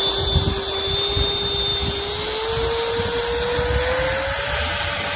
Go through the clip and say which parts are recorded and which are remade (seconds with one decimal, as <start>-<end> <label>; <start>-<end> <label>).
0.0-5.2 recorded